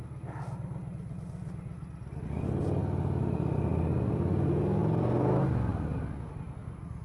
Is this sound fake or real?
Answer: real